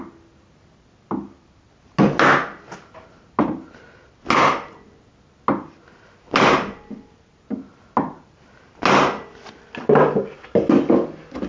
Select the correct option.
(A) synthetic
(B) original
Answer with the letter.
B